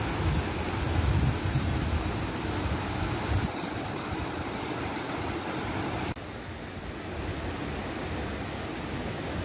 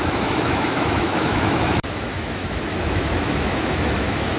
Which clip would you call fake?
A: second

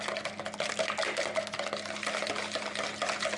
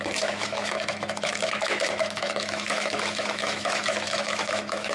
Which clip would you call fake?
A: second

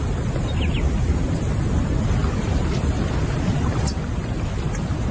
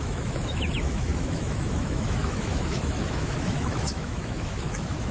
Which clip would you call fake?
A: second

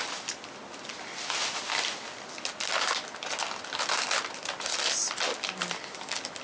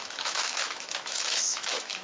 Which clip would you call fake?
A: second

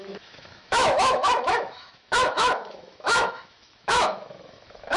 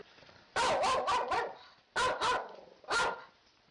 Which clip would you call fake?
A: first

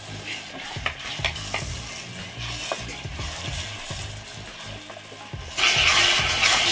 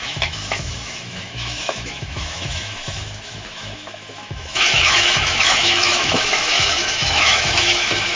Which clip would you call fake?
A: second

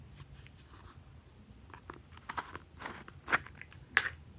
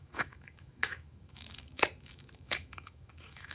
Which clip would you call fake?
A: second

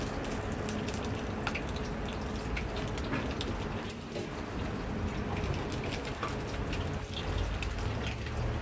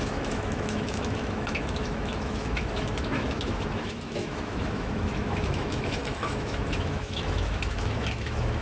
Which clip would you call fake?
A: second